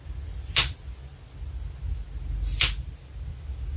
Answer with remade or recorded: recorded